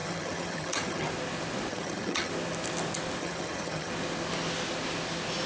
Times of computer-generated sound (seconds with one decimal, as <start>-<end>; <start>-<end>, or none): 0.0-1.1; 1.7-2.3; 3.2-3.9